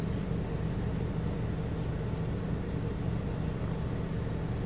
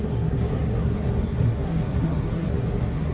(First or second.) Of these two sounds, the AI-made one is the second